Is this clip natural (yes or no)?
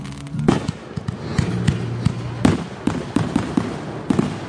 yes